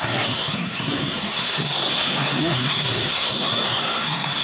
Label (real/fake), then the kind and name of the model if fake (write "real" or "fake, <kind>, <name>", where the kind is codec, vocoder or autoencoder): fake, codec, SNAC